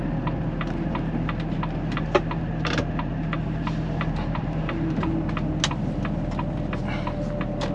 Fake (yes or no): no